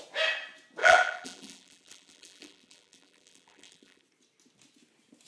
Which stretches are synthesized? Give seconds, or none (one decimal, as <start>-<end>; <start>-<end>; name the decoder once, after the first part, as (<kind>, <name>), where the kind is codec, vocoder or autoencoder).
0.8-4.0 (vocoder, BigVGAN v2)